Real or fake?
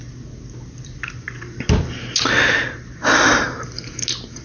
real